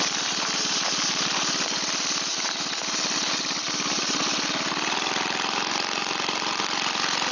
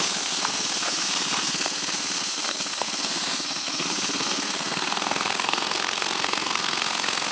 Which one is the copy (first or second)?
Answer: second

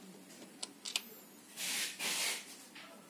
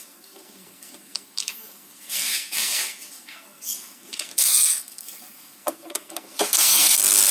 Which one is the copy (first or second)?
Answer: second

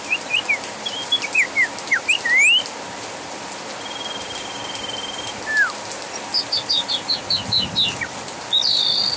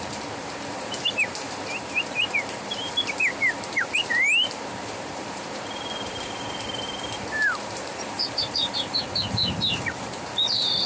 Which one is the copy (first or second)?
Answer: second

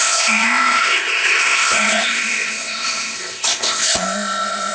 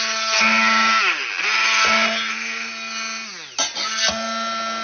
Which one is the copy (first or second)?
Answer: first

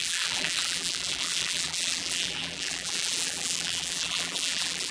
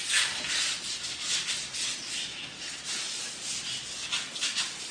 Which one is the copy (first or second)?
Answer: first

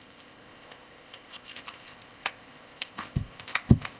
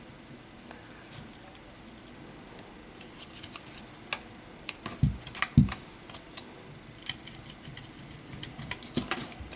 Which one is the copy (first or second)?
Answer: first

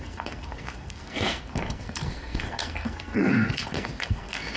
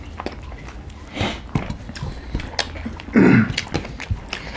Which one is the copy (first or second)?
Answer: first